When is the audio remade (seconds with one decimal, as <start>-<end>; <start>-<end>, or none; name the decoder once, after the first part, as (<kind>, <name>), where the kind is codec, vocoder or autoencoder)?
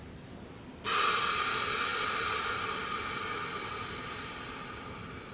none